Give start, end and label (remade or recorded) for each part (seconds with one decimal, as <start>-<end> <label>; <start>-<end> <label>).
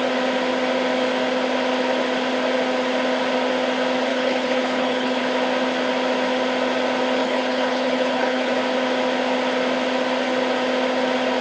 0.0-4.1 recorded; 4.1-5.2 remade; 5.2-7.2 recorded; 7.2-8.5 remade; 8.5-11.4 recorded